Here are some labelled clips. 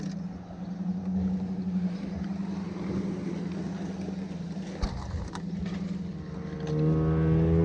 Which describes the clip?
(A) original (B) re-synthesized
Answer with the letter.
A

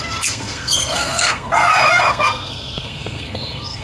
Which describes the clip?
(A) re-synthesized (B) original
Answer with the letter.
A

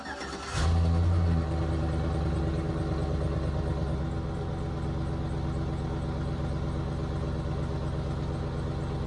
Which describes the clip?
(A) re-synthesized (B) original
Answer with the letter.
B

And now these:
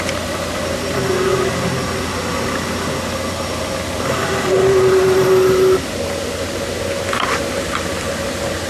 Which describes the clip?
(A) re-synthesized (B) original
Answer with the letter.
B